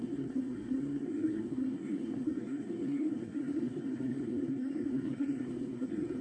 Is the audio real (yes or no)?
no